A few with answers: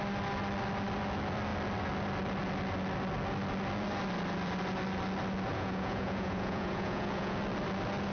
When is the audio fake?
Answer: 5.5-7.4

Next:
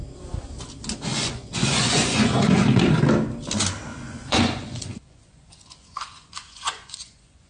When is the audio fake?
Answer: 1.1-2.8; 3.9-7.5

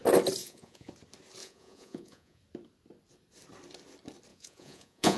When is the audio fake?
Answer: 0.4-0.9; 1.4-2.4; 4.3-5.2

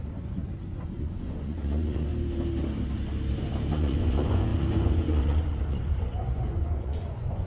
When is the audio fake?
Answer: 0.0-2.1; 3.7-7.5